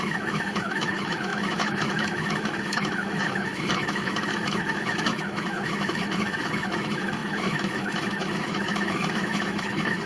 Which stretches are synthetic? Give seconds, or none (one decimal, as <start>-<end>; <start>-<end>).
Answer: 0.0-10.1